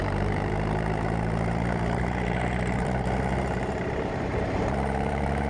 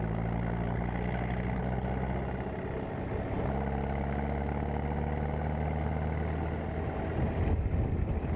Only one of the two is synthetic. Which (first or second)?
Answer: first